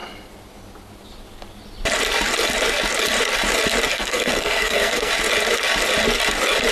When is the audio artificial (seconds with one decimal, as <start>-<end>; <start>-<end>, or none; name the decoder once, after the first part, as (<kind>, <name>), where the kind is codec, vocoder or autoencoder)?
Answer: 3.9-5.1 (codec, SNAC)